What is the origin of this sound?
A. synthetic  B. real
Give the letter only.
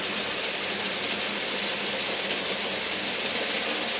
B